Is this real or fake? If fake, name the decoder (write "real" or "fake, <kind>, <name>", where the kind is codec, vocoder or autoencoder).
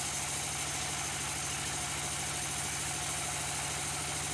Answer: real